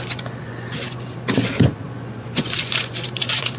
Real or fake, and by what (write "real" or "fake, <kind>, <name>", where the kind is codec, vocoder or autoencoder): fake, vocoder, Vocos